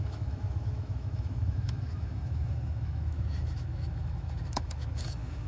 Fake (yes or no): yes